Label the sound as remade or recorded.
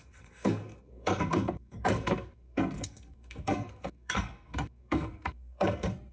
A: remade